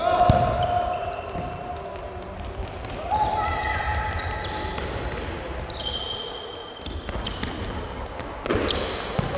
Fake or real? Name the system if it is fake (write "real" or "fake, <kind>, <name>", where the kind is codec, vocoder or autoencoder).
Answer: real